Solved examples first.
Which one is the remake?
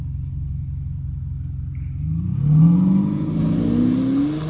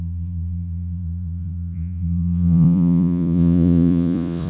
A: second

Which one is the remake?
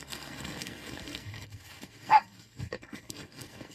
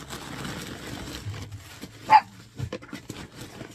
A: first